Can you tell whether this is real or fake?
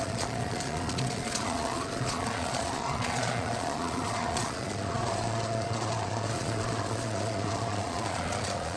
fake